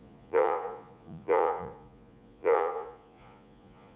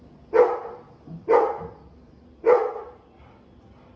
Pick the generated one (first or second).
first